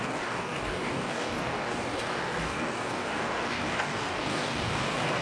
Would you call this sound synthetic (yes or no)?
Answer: yes